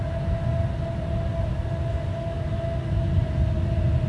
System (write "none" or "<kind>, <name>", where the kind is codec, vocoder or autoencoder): none